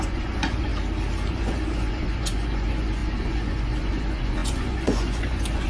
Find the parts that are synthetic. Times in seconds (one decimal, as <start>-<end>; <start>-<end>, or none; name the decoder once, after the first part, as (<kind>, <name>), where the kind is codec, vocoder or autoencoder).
0.0-0.7 (vocoder, Vocos); 1.3-5.7